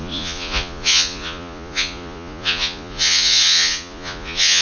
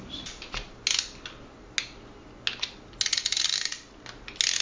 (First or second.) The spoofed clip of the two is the first